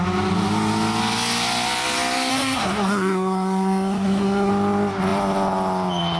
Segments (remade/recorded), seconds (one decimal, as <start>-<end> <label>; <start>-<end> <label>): 0.0-2.3 recorded; 2.3-4.5 remade; 4.5-6.2 recorded